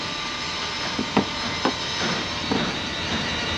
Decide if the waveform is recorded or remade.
recorded